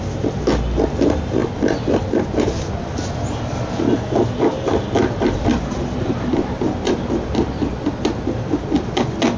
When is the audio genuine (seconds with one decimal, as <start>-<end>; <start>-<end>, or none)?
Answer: 0.0-5.0; 6.9-9.4